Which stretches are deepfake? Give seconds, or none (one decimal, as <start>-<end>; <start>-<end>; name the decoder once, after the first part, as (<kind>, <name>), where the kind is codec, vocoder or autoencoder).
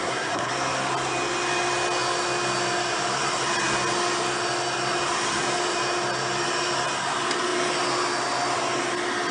0.0-0.5 (codec, SNAC)